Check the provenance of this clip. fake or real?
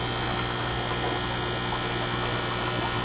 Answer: real